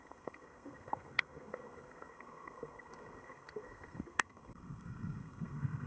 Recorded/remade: remade